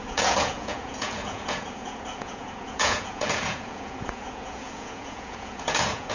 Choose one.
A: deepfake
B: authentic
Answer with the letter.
A